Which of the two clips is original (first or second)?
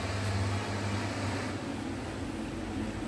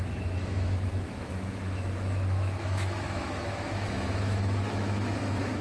first